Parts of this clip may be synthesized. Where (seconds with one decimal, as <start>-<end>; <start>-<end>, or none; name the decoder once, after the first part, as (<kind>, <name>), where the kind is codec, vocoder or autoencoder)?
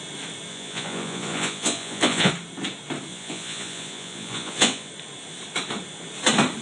0.5-2.3 (vocoder, Vocos); 3.1-4.9